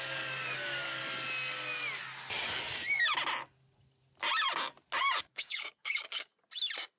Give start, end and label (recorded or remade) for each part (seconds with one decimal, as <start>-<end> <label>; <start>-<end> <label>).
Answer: 0.0-1.0 remade; 1.0-5.2 recorded; 5.2-6.3 remade; 6.3-7.0 recorded

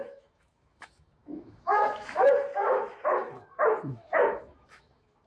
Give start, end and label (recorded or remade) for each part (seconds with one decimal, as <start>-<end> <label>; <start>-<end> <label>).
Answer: 0.0-5.3 remade

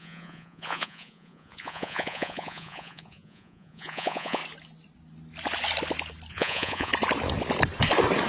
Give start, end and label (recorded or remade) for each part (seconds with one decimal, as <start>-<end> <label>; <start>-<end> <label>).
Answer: 0.0-4.4 remade; 4.4-6.3 recorded; 6.3-6.9 remade; 6.9-8.3 recorded

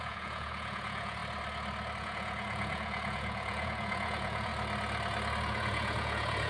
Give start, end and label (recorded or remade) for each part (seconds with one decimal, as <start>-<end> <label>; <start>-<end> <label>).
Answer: 0.0-1.2 remade; 1.2-2.0 recorded; 2.0-4.5 remade; 4.5-5.5 recorded; 5.5-6.5 remade

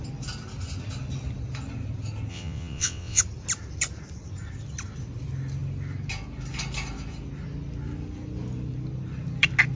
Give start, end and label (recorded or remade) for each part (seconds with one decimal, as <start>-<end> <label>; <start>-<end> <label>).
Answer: 0.0-2.3 recorded; 2.3-3.2 remade; 3.2-9.8 recorded

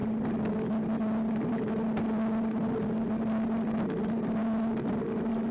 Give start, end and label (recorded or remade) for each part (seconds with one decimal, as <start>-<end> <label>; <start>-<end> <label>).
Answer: 0.0-5.5 recorded

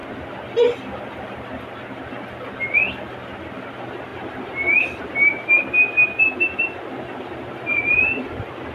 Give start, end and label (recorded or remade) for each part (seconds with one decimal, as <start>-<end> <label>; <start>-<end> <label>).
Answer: 0.0-1.0 remade; 1.0-8.7 recorded